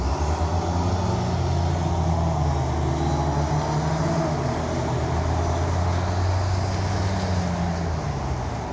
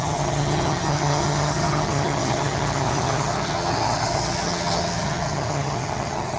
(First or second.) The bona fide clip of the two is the first